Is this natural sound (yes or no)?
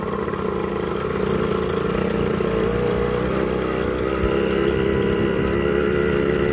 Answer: yes